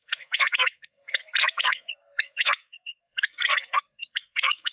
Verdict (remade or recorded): remade